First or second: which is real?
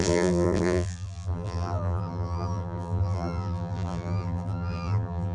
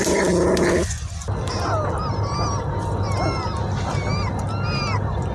second